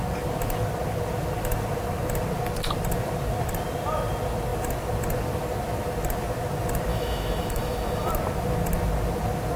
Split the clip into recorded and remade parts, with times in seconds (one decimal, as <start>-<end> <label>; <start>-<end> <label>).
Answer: 0.0-6.9 recorded; 6.9-8.1 remade; 8.1-9.6 recorded